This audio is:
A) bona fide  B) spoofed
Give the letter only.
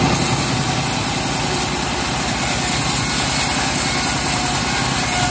A